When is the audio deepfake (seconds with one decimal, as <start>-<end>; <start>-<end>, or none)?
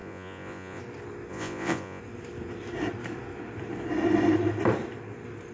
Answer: 0.0-0.8; 1.3-2.0